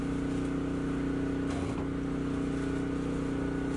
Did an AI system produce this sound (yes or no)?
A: no